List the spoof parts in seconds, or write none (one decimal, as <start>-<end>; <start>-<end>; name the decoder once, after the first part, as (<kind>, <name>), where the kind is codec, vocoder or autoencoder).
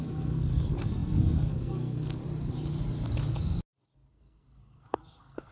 0.0-2.2 (codec, SNAC); 4.1-5.5